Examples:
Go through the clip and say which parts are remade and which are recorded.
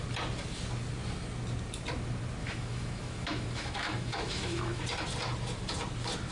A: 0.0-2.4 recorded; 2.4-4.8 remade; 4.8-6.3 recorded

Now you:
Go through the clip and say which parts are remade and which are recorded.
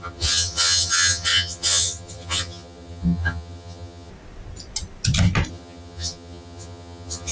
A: 0.0-4.1 remade; 4.1-5.5 recorded; 5.5-7.3 remade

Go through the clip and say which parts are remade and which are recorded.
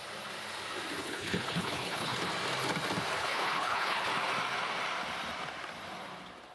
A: 0.0-1.0 recorded; 1.0-2.3 remade; 2.3-3.2 recorded; 3.2-4.1 remade; 4.1-6.5 recorded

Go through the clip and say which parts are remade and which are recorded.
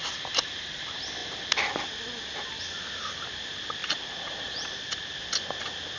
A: 0.0-6.0 recorded